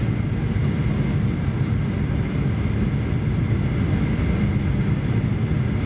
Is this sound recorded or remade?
recorded